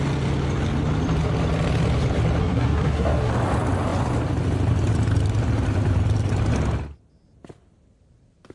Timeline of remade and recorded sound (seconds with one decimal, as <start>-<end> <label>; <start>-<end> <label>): 0.0-2.4 recorded; 2.4-3.3 remade; 3.3-8.5 recorded